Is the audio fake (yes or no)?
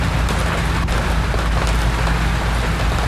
no